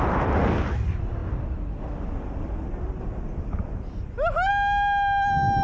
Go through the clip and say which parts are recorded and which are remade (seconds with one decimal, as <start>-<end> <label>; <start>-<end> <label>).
0.0-5.6 recorded